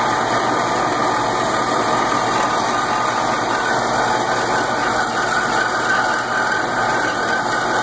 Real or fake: real